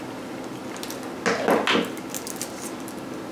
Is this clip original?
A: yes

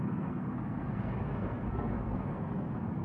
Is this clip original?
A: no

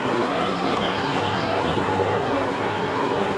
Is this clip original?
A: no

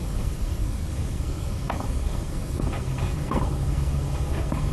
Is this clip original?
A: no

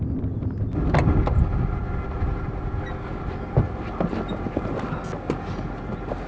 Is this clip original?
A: yes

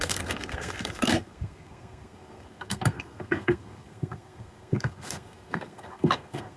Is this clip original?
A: no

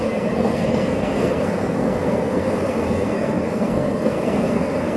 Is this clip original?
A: no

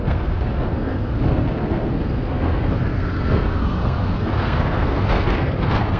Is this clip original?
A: no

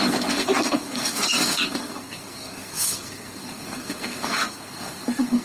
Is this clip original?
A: no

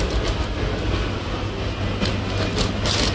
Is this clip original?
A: yes